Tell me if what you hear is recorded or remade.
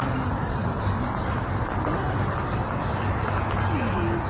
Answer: recorded